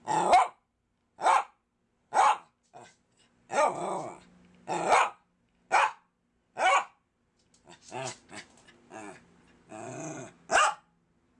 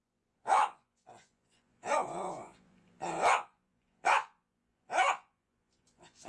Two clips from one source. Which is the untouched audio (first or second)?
first